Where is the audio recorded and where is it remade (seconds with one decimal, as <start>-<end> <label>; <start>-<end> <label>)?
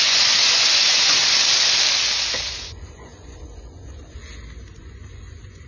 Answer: 0.0-1.2 remade; 1.2-2.4 recorded; 2.4-4.2 remade; 4.2-4.8 recorded; 4.8-5.7 remade